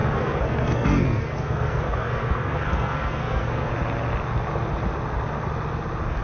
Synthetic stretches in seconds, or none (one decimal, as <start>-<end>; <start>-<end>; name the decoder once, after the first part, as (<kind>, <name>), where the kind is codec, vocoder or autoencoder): 0.0-3.7 (codec, SNAC)